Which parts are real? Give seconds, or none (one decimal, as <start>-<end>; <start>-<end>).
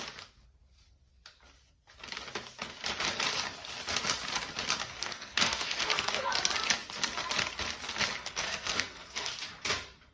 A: 0.0-4.8; 6.3-8.2; 9.3-10.1